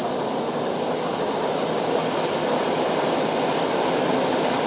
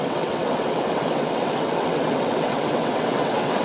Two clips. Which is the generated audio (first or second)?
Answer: second